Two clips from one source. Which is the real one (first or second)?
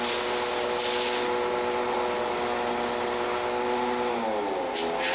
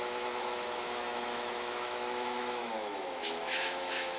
first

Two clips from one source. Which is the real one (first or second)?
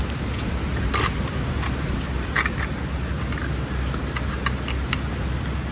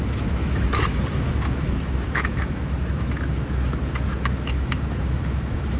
first